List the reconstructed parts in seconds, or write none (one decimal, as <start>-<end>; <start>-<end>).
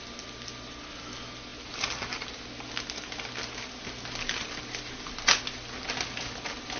none